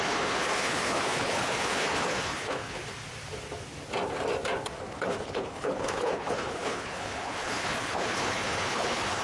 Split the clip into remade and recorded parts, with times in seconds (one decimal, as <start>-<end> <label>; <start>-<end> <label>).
0.0-2.8 remade; 2.8-4.8 recorded; 4.8-9.2 remade

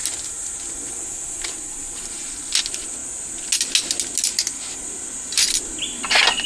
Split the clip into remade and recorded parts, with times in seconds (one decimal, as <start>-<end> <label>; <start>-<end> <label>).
0.0-6.5 recorded

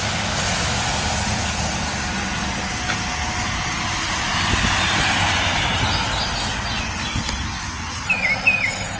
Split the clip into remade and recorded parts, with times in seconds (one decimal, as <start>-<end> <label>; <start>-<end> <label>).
0.0-9.0 recorded

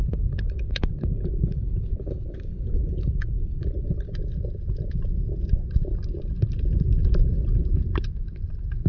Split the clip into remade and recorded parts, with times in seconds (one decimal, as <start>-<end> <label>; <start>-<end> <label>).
0.0-4.1 remade; 4.1-8.9 recorded

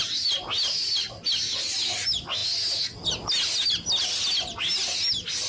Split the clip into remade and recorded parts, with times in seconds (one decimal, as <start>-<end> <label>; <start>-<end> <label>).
0.0-5.5 recorded

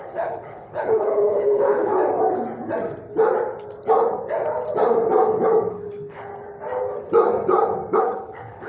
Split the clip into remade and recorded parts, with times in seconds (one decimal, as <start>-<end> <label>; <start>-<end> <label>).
0.0-1.9 remade; 1.9-5.7 recorded; 5.7-6.3 remade; 6.3-8.0 recorded; 8.0-8.7 remade

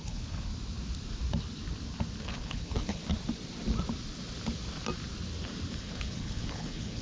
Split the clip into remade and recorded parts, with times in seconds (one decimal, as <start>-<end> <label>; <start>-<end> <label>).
0.0-0.5 remade; 0.5-2.2 recorded; 2.2-3.0 remade; 3.0-5.8 recorded; 5.8-7.0 remade

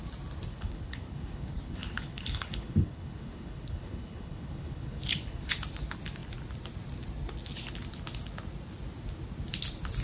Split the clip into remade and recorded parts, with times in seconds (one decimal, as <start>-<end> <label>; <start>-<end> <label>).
0.0-0.5 recorded; 0.5-5.5 remade; 5.5-10.0 recorded